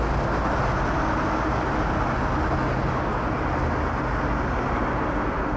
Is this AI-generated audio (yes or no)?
no